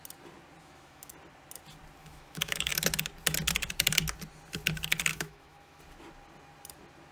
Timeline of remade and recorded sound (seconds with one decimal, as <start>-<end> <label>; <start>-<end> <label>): 0.0-0.6 recorded; 0.6-1.1 remade; 1.1-2.0 recorded; 2.0-2.7 remade; 2.7-5.1 recorded; 5.1-5.8 remade; 5.8-7.1 recorded